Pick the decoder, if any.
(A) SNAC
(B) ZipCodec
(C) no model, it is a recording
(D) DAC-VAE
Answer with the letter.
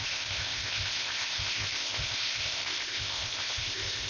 B